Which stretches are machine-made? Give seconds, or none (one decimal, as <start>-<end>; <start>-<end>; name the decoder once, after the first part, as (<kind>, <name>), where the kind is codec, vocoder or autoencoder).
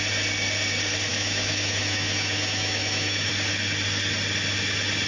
1.1-3.3 (autoencoder, DAC-VAE)